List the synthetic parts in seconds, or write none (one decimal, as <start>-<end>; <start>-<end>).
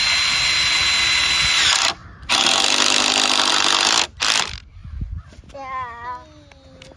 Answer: 2.0-3.5; 4.8-5.4